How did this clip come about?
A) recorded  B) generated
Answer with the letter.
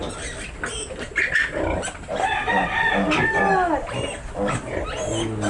A